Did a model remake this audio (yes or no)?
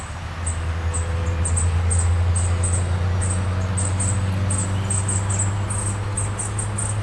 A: no